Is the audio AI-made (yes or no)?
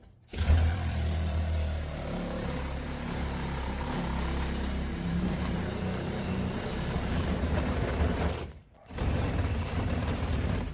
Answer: yes